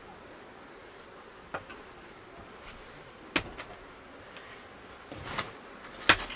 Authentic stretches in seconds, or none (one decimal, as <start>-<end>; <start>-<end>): 0.0-6.4